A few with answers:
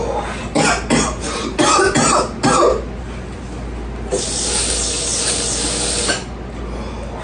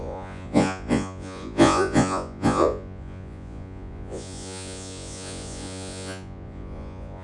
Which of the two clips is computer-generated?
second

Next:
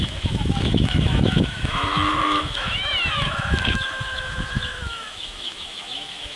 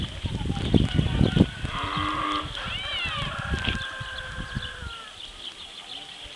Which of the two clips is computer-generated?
first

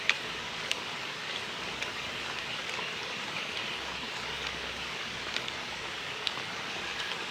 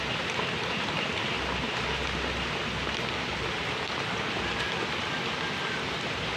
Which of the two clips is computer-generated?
first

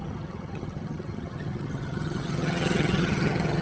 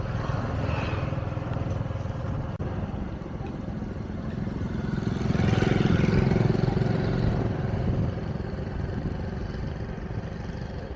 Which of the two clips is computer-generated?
first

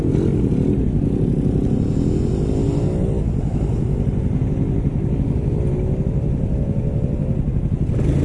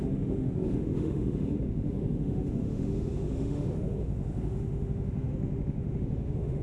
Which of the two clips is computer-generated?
second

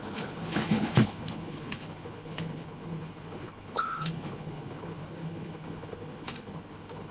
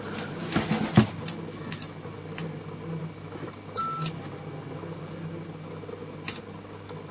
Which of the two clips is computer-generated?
first